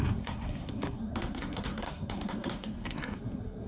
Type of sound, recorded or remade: remade